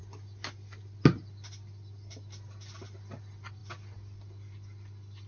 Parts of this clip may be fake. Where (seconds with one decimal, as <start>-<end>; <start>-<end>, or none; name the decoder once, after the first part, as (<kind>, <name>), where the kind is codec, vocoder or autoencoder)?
none